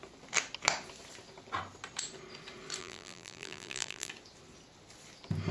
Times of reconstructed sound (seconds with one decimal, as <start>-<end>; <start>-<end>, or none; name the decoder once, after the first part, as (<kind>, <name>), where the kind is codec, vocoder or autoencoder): 2.8-4.1 (vocoder, BigVGAN v2)